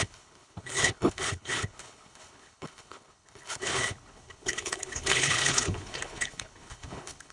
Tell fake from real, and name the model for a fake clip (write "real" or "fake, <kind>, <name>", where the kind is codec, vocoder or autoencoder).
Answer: fake, codec, HILCodec